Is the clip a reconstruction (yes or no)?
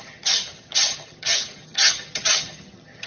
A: yes